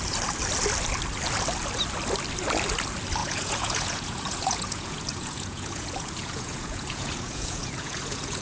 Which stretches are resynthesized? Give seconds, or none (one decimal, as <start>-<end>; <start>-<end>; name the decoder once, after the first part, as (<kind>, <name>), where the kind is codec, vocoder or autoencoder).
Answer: 3.2-8.4 (vocoder, Vocos)